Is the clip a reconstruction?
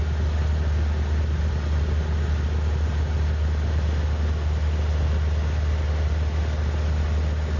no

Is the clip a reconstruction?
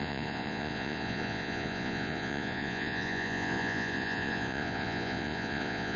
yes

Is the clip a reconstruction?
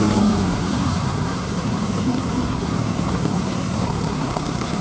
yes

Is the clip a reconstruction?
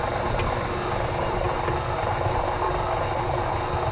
no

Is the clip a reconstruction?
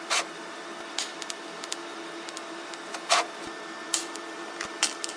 no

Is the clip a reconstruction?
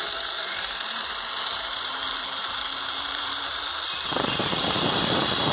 yes